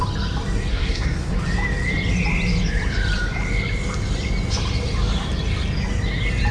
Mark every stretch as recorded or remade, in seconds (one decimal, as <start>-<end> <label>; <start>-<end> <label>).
0.0-0.7 recorded; 0.7-1.3 remade; 1.3-6.5 recorded